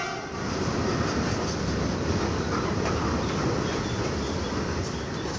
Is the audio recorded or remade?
recorded